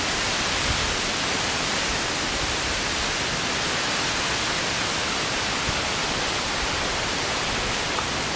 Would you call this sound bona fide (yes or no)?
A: yes